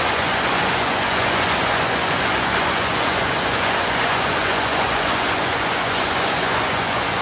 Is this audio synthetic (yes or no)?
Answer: yes